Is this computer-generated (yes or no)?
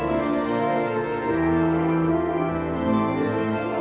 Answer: yes